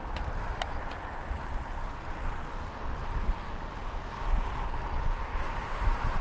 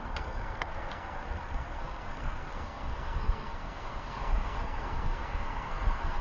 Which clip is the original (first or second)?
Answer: first